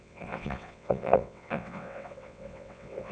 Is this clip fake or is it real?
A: fake